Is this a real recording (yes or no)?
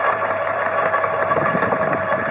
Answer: no